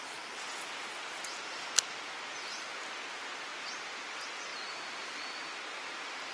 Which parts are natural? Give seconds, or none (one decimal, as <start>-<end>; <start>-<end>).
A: 0.0-6.3